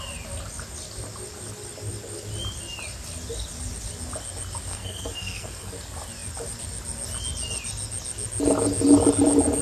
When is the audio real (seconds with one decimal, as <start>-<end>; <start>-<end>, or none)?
0.0-4.7; 5.7-9.6